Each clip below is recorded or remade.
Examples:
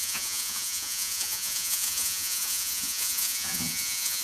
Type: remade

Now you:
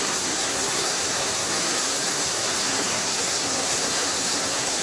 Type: remade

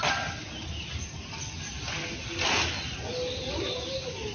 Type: recorded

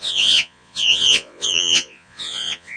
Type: remade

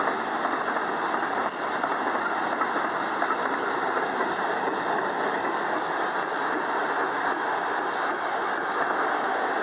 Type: recorded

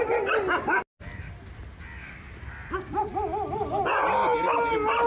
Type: recorded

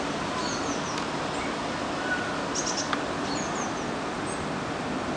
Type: recorded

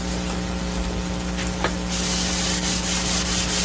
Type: recorded